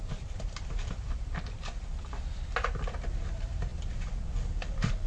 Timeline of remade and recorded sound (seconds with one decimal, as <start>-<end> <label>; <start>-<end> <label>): 0.0-5.1 remade